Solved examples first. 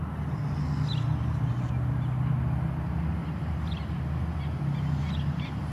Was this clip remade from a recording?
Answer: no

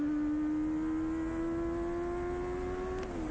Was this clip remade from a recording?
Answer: no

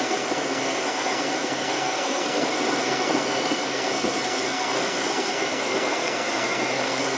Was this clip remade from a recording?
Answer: yes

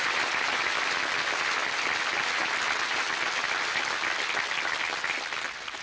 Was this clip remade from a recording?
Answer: no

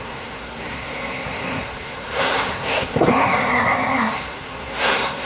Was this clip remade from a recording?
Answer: yes